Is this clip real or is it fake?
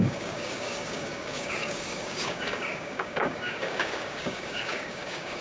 fake